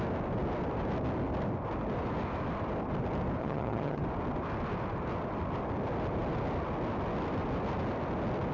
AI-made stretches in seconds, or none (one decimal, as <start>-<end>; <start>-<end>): 3.4-4.0